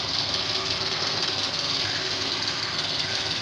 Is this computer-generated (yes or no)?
yes